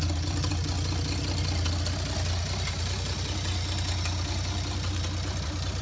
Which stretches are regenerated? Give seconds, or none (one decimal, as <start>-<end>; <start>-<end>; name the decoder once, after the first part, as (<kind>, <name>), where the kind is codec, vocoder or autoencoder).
none